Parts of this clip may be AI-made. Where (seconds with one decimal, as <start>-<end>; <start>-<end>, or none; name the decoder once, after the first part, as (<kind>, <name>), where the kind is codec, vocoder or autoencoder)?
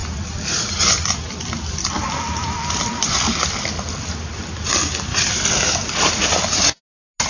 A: 1.8-2.8 (vocoder, BigVGAN v2); 5.1-6.1